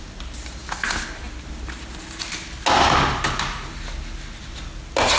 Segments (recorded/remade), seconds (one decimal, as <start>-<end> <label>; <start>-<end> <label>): 0.0-5.2 recorded